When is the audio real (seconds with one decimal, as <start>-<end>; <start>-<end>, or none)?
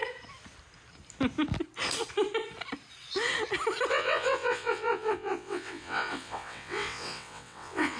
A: 0.0-3.9